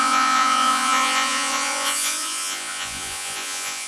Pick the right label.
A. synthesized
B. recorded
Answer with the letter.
A